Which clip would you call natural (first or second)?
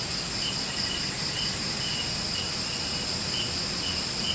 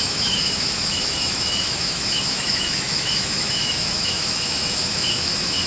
first